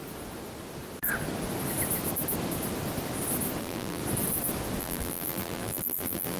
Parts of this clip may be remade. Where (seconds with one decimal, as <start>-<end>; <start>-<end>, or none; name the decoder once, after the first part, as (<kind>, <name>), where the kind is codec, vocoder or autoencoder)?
3.6-4.0 (vocoder, BigVGAN v2); 4.8-6.4